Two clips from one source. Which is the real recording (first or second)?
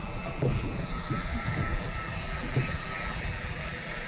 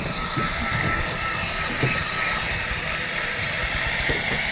second